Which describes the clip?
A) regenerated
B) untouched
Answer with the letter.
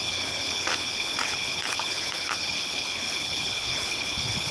A